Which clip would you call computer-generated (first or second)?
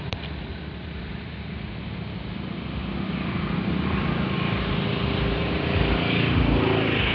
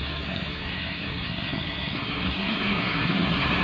second